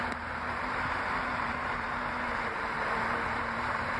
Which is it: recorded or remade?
remade